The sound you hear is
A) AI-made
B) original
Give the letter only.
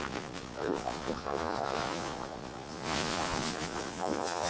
A